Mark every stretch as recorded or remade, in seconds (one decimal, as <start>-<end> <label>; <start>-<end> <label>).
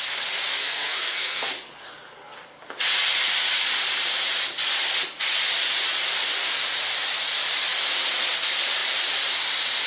0.0-0.5 recorded; 0.5-1.5 remade; 1.5-9.9 recorded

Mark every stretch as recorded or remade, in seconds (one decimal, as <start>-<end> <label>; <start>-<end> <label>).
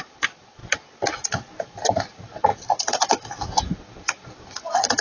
0.0-0.6 remade; 0.6-1.6 recorded; 1.6-5.0 remade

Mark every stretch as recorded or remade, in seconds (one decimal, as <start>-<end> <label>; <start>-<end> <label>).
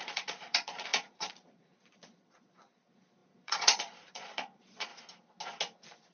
0.0-4.9 remade; 4.9-6.1 recorded